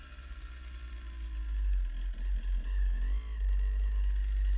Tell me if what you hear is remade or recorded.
recorded